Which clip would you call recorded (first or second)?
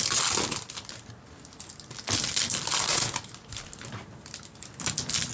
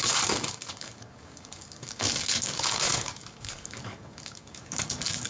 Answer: first